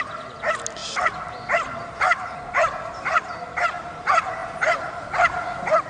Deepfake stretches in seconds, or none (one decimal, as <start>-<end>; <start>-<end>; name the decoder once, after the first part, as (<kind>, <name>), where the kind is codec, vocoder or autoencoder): none

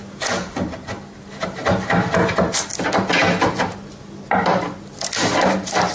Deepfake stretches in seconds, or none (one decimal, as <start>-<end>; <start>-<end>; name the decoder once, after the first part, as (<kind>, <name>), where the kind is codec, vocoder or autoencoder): none

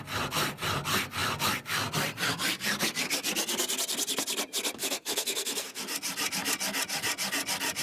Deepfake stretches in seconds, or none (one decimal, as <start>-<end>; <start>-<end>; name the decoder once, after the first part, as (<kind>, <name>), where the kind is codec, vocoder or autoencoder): 4.8-5.8 (codec, SNAC)